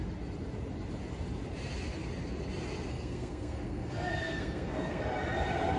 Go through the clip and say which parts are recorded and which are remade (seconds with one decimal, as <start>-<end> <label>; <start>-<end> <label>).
0.0-2.9 recorded; 2.9-5.0 remade; 5.0-5.8 recorded